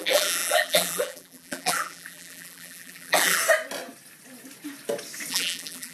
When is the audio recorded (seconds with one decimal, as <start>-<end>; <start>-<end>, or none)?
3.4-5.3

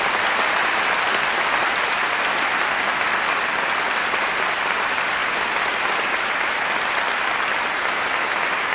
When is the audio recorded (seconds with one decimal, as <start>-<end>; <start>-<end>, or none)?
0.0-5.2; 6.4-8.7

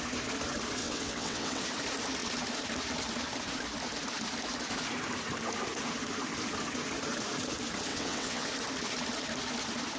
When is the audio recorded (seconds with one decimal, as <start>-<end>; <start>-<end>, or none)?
0.0-0.8; 1.6-7.9; 8.5-10.0

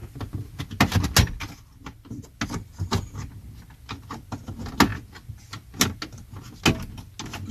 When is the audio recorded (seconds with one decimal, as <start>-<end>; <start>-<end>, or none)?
0.0-7.5

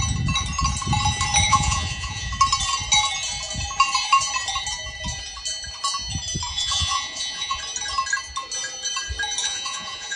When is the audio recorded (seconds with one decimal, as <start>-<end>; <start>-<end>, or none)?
0.0-1.5; 2.3-6.5; 7.6-9.4